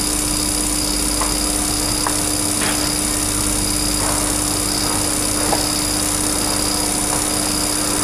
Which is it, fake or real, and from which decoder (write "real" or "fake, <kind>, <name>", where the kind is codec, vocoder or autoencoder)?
real